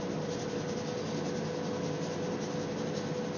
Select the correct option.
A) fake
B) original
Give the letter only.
B